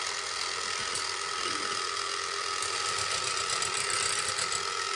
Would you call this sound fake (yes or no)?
no